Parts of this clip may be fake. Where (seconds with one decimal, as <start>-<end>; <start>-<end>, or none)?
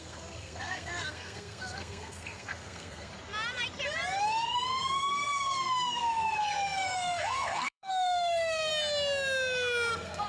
0.0-3.1; 4.2-8.7; 9.9-10.3